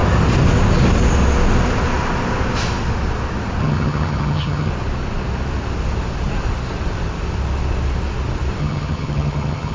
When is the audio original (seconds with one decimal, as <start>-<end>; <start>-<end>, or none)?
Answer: 0.0-3.6; 4.7-8.6